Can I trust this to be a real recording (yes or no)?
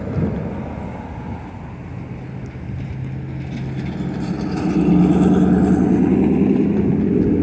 yes